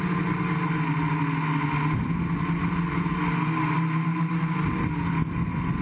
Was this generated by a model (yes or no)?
no